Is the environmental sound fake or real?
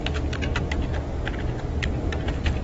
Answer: real